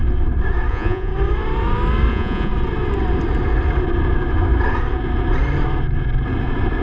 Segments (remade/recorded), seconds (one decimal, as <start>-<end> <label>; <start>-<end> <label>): 0.0-0.7 recorded; 0.7-1.1 remade; 1.1-2.1 recorded; 2.1-2.5 remade; 2.5-6.8 recorded